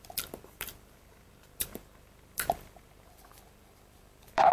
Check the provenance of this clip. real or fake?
fake